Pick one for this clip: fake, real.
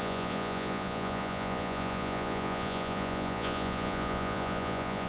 fake